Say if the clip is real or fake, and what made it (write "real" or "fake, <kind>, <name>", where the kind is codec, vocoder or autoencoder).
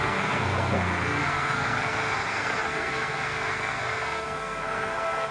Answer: fake, codec, SNAC